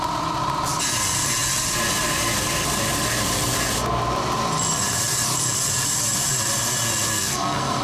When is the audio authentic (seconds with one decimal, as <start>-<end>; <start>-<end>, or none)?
0.0-7.1